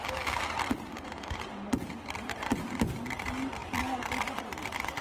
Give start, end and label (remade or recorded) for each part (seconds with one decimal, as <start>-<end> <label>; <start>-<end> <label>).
0.0-0.9 recorded; 0.9-1.4 remade; 1.4-5.0 recorded